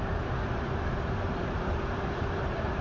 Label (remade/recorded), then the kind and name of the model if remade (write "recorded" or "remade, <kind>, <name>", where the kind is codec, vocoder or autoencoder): remade, vocoder, BigVGAN v2